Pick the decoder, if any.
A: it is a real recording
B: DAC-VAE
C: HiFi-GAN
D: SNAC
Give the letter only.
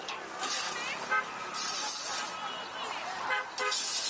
A